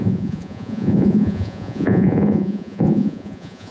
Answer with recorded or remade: remade